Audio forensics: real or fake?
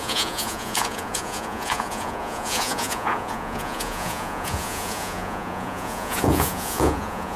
fake